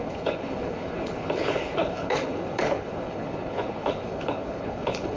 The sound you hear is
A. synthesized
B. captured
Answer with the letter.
A